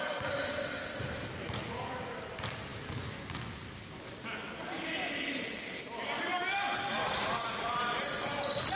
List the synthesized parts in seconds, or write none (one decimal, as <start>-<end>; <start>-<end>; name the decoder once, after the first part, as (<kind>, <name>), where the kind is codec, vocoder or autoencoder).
none